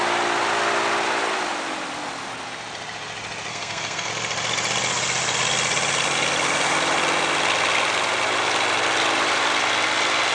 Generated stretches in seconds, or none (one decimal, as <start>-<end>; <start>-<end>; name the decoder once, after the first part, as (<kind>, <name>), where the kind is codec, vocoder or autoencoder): 3.5-4.1 (codec, SNAC)